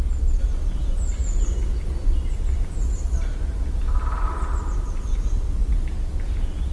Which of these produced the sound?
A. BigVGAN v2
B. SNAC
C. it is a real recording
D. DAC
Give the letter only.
C